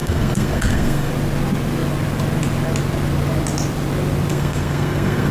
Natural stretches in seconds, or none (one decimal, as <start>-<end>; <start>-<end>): 1.1-4.3